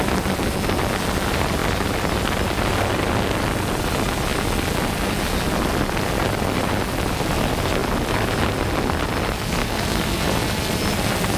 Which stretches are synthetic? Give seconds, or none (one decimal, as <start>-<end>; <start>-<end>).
9.6-10.2